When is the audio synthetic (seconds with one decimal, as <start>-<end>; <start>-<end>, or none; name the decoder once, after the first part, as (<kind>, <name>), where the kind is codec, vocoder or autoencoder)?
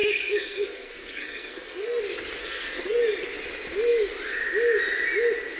0.0-2.0 (codec, SNAC); 2.4-3.0